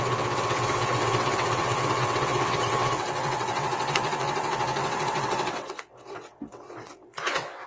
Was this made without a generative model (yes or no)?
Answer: no